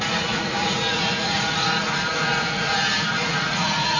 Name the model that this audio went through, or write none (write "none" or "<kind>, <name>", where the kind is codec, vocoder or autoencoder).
vocoder, Vocos